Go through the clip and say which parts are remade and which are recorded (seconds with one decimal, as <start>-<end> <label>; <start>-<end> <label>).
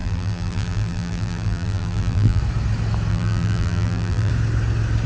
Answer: 0.0-2.4 remade; 2.4-3.1 recorded; 3.1-4.3 remade; 4.3-5.1 recorded